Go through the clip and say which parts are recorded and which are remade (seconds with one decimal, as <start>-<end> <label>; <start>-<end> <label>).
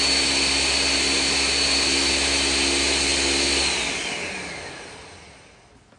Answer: 0.0-6.0 recorded